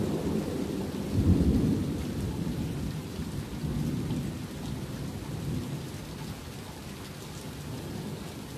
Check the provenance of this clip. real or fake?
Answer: fake